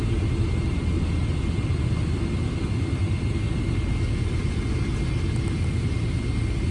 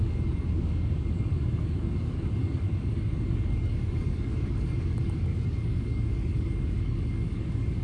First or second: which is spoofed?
second